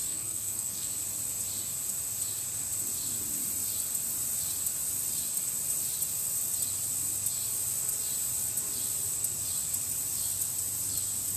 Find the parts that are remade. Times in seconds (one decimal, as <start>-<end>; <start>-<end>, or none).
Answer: 0.0-0.9